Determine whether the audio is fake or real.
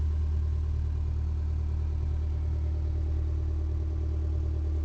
real